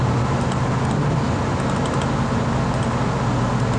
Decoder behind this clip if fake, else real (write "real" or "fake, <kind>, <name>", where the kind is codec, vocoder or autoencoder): real